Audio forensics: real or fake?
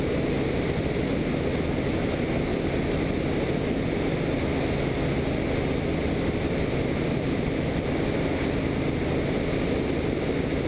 real